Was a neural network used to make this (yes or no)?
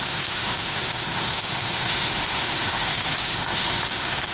yes